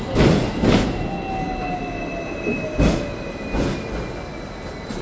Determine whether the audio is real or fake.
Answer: real